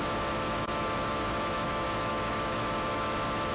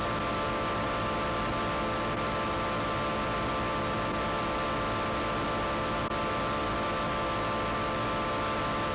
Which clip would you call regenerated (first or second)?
first